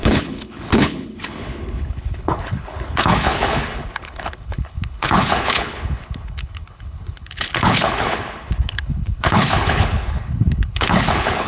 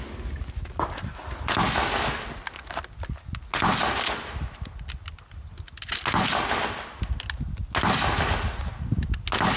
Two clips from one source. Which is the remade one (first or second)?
first